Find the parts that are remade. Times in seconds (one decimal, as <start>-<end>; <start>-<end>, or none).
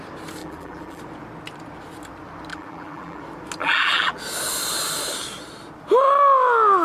0.4-1.0; 2.5-3.2; 3.6-4.2